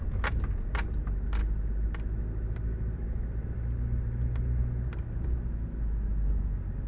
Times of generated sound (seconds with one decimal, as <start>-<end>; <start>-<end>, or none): none